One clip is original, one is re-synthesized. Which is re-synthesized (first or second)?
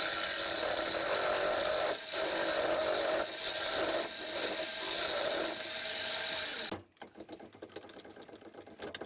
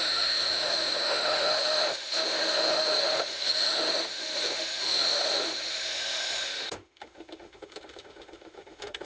second